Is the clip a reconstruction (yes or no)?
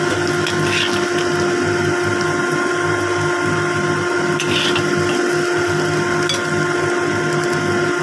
no